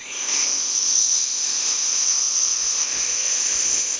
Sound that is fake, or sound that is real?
fake